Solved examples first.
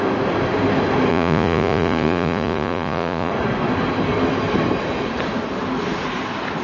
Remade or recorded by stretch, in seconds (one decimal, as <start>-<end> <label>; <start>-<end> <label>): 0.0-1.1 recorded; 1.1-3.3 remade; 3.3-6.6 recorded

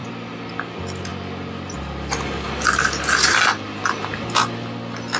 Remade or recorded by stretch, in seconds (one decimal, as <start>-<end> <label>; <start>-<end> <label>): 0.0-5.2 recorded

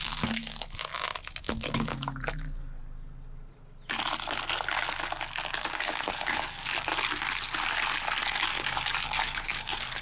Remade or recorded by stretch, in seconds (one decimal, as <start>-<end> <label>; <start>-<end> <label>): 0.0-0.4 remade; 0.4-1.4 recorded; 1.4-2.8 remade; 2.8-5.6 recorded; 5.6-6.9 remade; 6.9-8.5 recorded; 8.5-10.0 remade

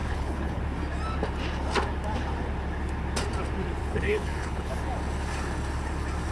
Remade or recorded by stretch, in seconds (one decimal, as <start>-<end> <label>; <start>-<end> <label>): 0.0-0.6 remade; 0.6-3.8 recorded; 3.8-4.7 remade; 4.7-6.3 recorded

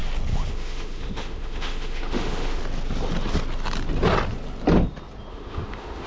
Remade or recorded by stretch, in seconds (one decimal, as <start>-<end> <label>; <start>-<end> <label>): 0.0-0.5 recorded; 0.5-2.6 remade; 2.6-5.3 recorded; 5.3-6.1 remade